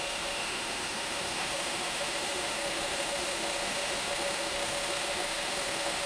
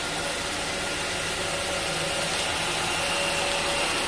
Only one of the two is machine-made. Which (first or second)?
first